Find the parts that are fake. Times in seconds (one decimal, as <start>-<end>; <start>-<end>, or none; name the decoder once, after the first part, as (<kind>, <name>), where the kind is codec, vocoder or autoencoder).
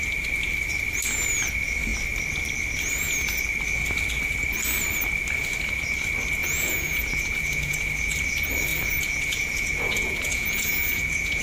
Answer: 6.4-7.9 (vocoder, Vocos); 8.7-11.4